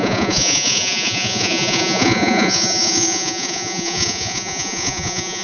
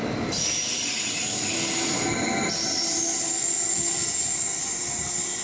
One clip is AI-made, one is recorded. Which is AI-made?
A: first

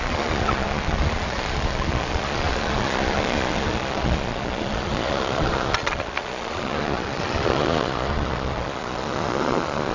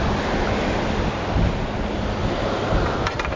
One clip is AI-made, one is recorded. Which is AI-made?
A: first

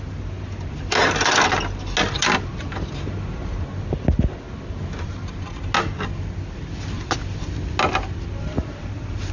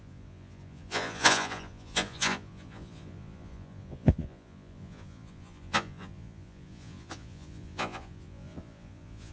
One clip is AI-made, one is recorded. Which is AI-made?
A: second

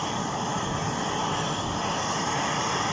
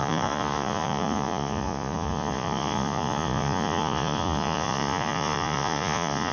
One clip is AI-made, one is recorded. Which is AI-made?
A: second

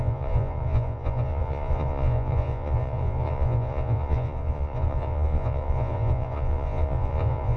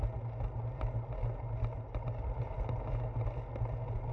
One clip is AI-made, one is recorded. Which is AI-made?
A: first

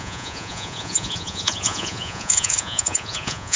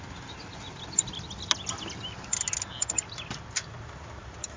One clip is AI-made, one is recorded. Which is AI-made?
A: first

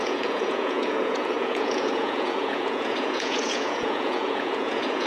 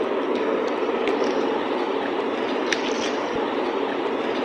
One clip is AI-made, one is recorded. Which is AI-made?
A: first